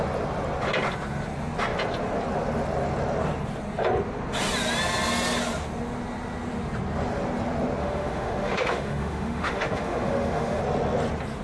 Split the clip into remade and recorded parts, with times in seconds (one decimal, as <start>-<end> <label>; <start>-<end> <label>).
0.0-7.8 recorded; 7.8-10.6 remade; 10.6-11.4 recorded